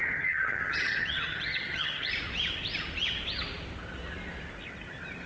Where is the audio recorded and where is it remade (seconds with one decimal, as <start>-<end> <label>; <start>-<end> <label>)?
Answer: 0.0-2.1 remade; 2.1-5.3 recorded